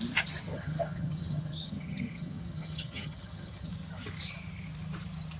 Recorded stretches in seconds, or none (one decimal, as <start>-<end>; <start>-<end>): 0.0-0.5; 3.7-5.4